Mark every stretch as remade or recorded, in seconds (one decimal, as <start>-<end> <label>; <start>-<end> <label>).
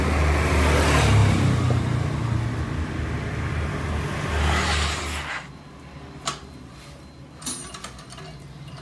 0.0-8.8 recorded